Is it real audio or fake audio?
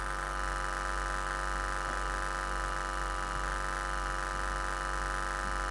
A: real